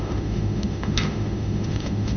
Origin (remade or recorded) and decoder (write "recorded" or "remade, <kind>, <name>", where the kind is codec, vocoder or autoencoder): remade, autoencoder, DAC-VAE